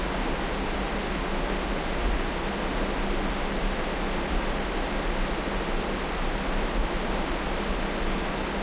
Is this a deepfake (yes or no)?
no